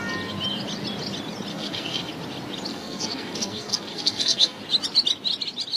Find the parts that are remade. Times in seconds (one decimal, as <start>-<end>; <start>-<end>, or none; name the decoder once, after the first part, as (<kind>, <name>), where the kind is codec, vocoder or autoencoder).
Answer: 1.5-2.1 (codec, SNAC); 2.7-4.6